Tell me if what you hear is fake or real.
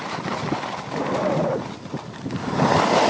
real